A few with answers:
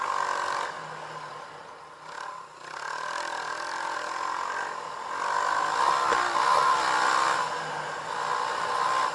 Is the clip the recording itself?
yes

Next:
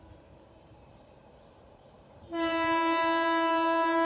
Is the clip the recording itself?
no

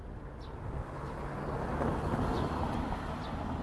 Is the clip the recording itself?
yes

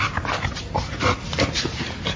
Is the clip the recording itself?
yes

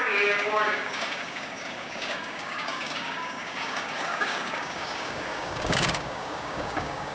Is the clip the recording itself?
no